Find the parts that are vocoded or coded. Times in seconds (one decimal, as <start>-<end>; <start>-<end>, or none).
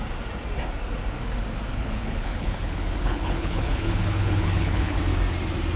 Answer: 1.7-5.0